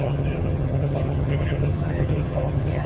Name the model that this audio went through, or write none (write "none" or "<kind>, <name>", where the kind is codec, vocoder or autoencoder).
vocoder, HiFi-GAN